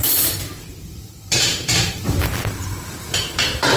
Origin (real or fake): fake